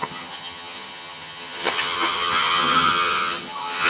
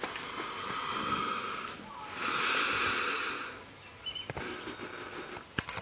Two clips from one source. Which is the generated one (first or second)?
first